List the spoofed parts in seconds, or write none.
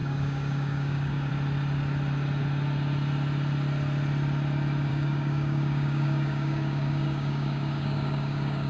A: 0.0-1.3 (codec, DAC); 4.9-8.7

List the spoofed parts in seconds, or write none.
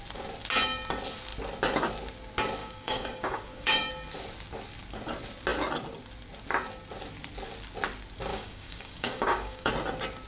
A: 2.6-3.9 (codec, DAC); 8.3-9.7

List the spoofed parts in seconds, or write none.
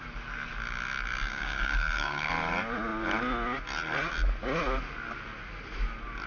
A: 1.3-2.3 (codec, DAC)